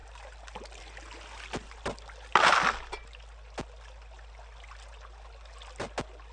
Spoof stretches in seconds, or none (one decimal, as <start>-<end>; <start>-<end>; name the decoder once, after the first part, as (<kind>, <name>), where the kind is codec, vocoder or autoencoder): none